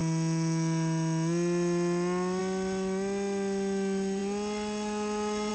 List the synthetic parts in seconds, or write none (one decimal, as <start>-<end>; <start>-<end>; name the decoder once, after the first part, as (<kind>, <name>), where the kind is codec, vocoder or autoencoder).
none